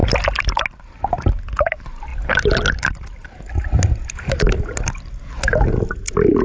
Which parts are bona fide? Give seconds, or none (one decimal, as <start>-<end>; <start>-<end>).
0.0-6.4